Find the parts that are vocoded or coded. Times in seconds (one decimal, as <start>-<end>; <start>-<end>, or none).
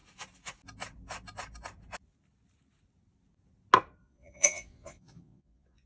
4.0-5.9